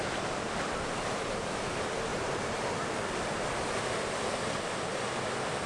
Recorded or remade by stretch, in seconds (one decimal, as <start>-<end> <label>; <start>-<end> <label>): 0.0-2.1 recorded; 2.1-3.3 remade; 3.3-5.7 recorded